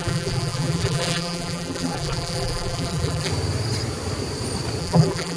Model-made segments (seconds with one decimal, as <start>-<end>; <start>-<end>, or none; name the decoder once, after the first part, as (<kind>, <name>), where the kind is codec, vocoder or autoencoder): 0.0-3.3 (vocoder, BigVGAN v2); 4.8-5.4